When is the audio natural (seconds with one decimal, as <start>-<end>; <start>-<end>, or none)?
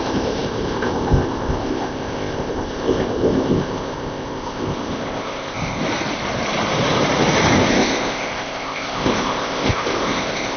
5.8-7.7